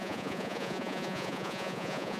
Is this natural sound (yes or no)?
no